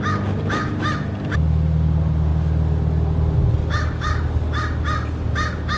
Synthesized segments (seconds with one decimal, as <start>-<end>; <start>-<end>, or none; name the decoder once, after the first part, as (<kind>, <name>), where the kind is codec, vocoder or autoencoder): none